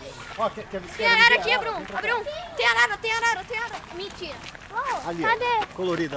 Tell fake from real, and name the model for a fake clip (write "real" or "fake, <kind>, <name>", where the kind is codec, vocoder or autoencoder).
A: real